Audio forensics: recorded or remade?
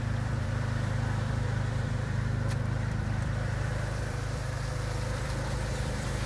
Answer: remade